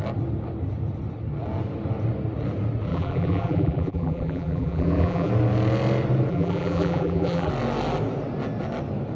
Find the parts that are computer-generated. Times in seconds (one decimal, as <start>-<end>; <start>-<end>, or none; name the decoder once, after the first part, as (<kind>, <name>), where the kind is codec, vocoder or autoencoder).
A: 2.9-5.3 (vocoder, BigVGAN v2); 6.3-7.5